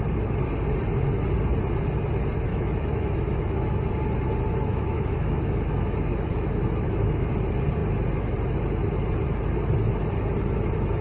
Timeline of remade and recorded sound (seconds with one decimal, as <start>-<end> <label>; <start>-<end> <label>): 0.0-2.5 recorded; 2.5-3.9 remade; 3.9-4.7 recorded; 4.7-7.3 remade; 7.3-11.0 recorded